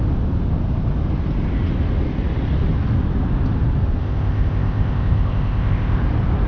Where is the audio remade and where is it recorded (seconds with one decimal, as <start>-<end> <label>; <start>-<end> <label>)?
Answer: 0.0-4.0 recorded; 4.0-6.0 remade; 6.0-6.5 recorded